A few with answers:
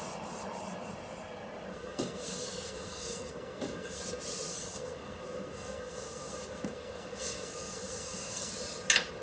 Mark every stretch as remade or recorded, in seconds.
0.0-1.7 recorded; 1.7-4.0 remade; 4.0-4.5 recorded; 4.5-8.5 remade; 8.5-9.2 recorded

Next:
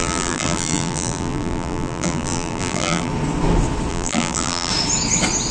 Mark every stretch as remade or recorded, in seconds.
0.0-3.1 remade; 3.1-3.9 recorded; 3.9-4.7 remade; 4.7-5.5 recorded

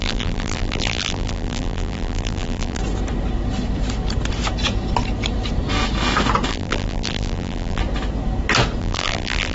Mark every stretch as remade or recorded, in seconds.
0.0-2.8 remade; 2.8-6.5 recorded; 6.5-7.8 remade; 7.8-8.8 recorded; 8.8-9.5 remade